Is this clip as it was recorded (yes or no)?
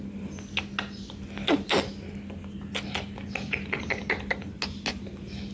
yes